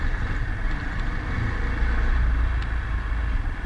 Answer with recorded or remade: recorded